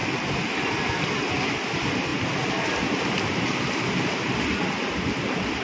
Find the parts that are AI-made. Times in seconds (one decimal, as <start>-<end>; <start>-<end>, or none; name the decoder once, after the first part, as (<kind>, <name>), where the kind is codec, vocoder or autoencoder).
none